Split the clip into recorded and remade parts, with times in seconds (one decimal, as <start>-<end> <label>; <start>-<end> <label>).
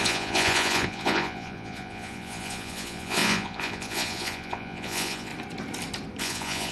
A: 0.0-5.3 remade; 5.3-6.2 recorded; 6.2-6.7 remade